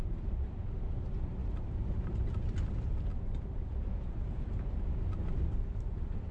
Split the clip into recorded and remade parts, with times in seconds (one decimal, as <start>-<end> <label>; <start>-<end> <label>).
0.0-6.3 recorded